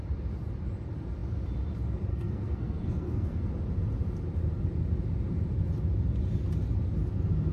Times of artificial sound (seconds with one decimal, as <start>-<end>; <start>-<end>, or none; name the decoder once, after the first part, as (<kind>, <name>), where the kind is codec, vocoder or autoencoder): 2.1-3.5 (codec, SNAC)